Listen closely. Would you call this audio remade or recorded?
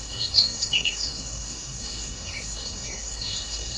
remade